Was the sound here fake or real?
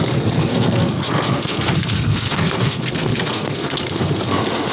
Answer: fake